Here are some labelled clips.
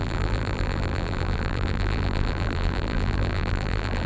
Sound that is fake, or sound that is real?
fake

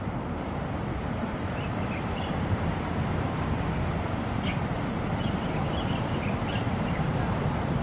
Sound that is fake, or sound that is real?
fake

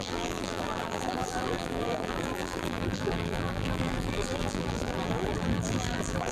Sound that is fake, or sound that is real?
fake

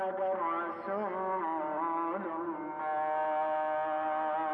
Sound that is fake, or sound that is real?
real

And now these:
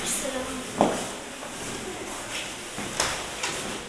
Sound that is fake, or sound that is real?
real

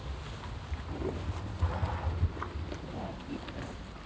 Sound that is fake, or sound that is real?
real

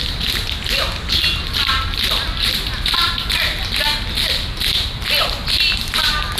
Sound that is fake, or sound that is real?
real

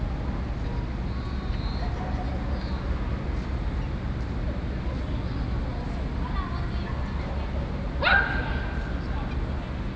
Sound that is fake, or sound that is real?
real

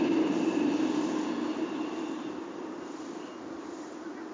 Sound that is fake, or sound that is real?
real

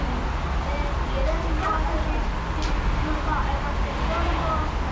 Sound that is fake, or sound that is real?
real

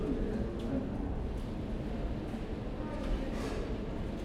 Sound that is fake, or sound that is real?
real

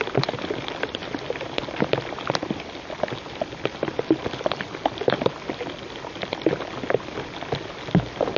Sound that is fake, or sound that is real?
real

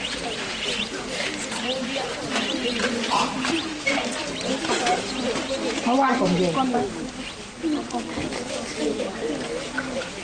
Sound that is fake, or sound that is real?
real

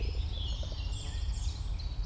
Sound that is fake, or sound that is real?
real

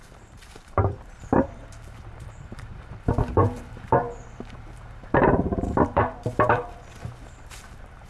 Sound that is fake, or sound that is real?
fake